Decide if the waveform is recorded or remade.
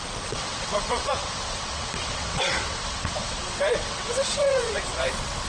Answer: remade